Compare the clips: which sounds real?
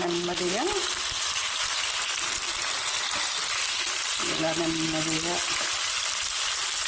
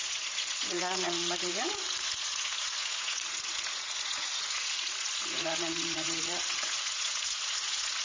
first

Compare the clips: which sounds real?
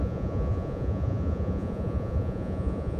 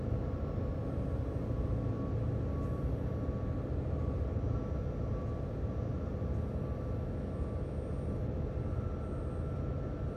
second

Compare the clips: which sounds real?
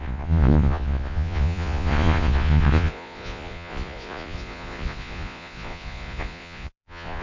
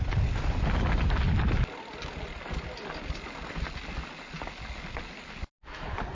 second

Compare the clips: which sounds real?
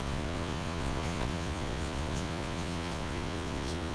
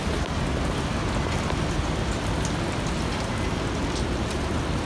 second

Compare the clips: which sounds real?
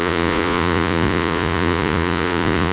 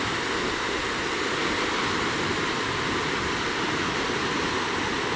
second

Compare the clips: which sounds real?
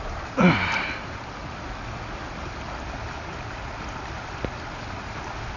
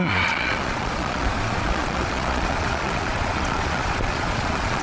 first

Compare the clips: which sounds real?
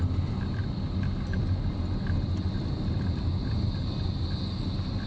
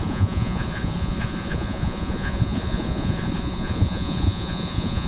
first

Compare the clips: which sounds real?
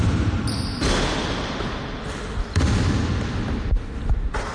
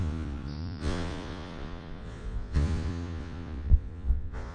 first